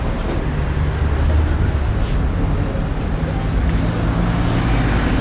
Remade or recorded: recorded